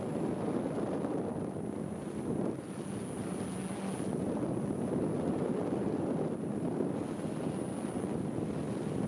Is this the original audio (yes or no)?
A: yes